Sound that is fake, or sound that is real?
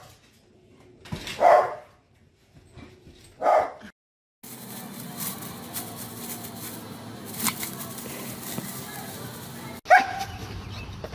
real